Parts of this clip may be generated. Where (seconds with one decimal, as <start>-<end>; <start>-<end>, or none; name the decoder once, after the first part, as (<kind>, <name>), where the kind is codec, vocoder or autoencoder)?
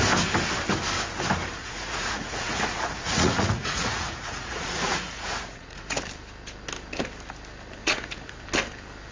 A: 1.6-6.0 (vocoder, Vocos); 7.8-8.4